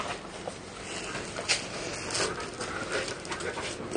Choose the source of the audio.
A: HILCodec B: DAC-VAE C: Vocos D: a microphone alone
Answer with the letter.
D